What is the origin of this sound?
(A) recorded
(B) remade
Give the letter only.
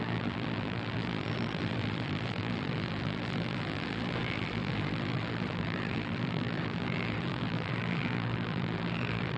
B